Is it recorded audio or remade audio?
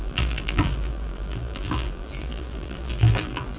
remade